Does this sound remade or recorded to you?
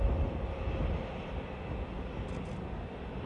recorded